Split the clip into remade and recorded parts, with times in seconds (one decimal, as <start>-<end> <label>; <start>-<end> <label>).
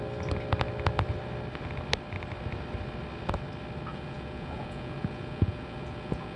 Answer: 0.0-3.9 recorded; 3.9-6.4 remade